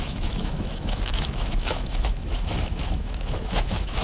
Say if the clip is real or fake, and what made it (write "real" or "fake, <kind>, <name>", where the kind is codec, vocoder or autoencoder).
fake, autoencoder, DAC-VAE